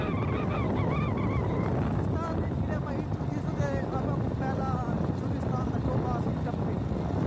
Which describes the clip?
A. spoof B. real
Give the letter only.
B